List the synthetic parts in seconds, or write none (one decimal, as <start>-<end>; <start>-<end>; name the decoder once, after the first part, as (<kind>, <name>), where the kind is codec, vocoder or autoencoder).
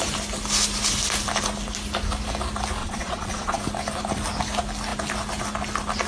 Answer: 2.8-3.6 (vocoder, Vocos)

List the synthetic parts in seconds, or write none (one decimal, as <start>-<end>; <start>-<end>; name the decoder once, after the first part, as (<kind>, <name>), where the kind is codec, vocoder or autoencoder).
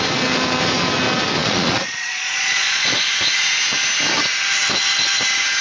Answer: 1.4-3.1 (vocoder, Vocos)